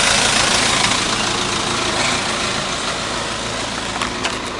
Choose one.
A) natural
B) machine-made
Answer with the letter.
A